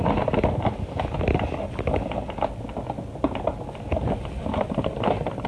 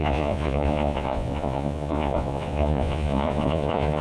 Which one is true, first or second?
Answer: first